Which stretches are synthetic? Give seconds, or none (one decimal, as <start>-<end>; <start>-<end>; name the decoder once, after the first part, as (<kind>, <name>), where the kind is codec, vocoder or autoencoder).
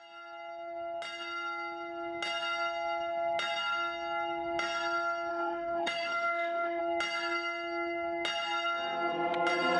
5.3-6.8 (autoencoder, DAC-VAE)